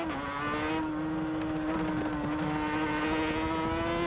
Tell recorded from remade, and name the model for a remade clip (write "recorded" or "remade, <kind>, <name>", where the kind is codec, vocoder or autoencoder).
recorded